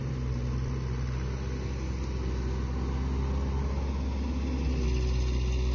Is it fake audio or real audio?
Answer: real